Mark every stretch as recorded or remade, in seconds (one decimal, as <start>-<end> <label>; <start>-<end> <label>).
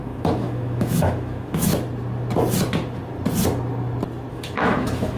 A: 0.0-1.7 remade; 1.7-4.3 recorded; 4.3-5.2 remade